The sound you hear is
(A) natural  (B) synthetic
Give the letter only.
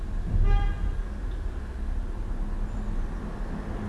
A